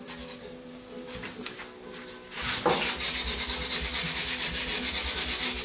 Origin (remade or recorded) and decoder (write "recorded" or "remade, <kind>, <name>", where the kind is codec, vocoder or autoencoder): recorded